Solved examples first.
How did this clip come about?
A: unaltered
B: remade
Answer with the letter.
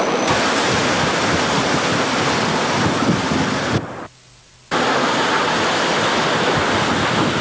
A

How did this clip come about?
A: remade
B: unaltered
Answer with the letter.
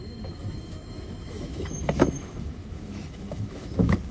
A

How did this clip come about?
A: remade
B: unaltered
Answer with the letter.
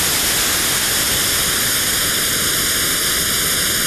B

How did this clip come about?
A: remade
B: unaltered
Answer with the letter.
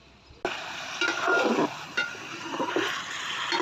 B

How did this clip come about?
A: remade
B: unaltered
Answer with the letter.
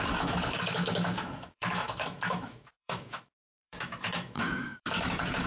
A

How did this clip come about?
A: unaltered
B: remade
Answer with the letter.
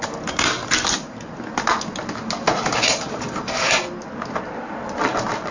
A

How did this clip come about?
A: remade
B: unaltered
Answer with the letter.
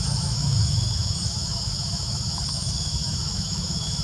A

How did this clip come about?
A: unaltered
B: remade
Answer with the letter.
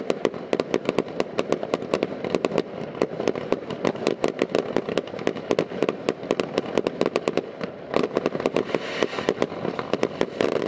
A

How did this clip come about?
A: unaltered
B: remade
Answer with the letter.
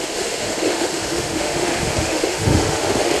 B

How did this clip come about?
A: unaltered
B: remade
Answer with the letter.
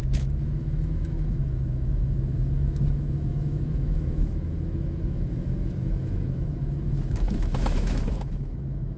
B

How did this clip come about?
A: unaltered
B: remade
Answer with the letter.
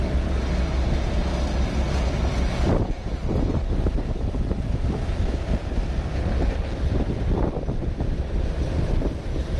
A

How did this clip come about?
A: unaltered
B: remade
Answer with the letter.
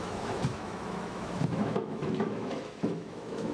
B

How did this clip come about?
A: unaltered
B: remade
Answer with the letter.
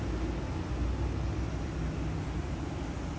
A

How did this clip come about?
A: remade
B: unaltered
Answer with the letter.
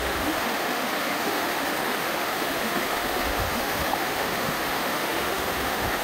A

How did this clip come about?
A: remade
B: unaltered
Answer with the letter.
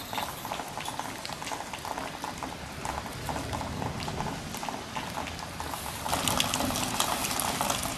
B